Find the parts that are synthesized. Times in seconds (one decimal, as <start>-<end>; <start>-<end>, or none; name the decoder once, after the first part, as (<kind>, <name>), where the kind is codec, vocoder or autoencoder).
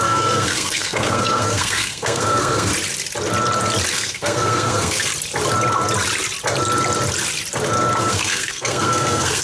0.0-2.7 (codec, SNAC); 3.9-5.1; 8.0-9.4